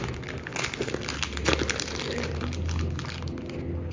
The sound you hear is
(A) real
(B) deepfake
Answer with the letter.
A